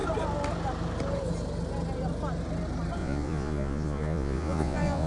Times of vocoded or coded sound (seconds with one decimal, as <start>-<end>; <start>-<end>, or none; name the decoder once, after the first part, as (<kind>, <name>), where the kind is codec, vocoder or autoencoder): 3.0-5.1 (vocoder, Vocos)